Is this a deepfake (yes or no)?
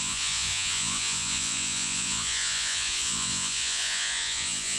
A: yes